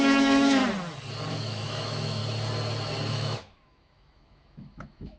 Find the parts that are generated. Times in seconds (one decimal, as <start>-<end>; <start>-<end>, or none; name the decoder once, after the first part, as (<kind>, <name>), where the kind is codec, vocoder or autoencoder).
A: 0.0-0.6 (autoencoder, DAC-VAE); 1.3-2.2; 3.1-5.2